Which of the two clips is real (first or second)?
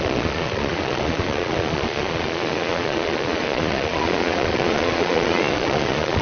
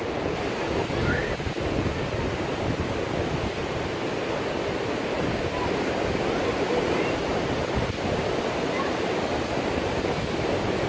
second